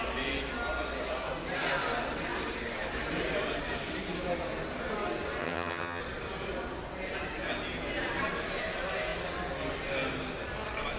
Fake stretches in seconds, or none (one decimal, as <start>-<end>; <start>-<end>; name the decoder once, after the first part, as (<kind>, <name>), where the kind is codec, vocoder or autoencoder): 5.4-6.0 (vocoder, HiFi-GAN)